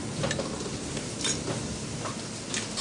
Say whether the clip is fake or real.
real